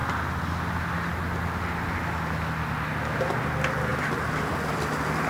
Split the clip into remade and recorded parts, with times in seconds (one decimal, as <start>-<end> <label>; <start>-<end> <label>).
0.0-5.3 recorded